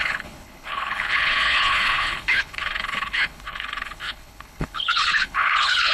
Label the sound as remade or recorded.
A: remade